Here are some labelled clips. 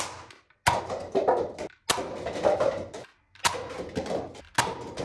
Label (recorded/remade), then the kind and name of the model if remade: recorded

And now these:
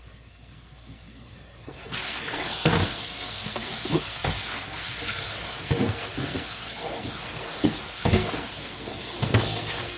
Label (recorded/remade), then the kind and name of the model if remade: remade, codec, SNAC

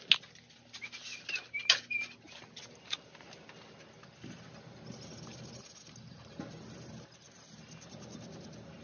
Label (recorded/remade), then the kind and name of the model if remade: recorded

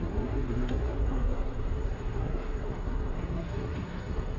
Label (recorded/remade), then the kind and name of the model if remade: remade, codec, SNAC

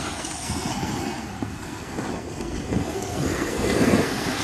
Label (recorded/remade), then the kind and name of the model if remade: remade, codec, SNAC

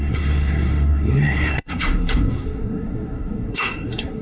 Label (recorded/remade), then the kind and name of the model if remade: remade, codec, SNAC